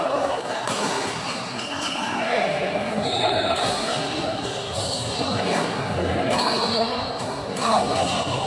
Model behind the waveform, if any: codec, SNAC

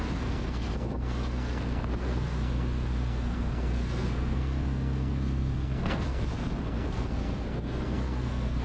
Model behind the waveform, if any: codec, SNAC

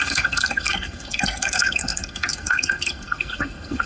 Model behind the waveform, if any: codec, SNAC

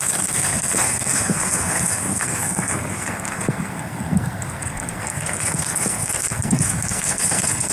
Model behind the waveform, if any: codec, SNAC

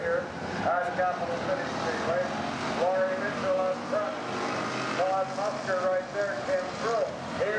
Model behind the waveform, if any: none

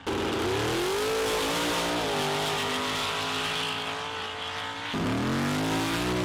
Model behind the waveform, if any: none